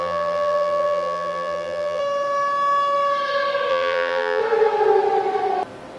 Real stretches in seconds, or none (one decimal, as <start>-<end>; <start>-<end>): 2.0-3.7; 4.4-6.0